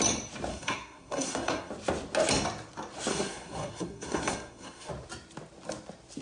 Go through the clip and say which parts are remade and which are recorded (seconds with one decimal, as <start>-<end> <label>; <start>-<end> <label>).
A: 0.0-0.5 recorded; 0.5-1.7 remade; 1.7-3.1 recorded; 3.1-4.9 remade; 4.9-6.2 recorded